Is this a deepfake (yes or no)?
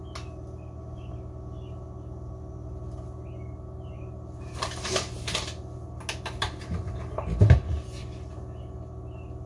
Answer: no